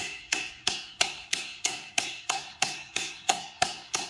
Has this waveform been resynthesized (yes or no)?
yes